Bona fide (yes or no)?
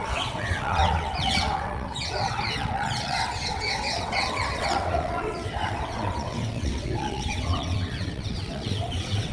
no